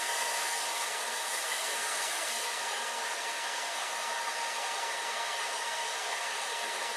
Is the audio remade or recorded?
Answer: remade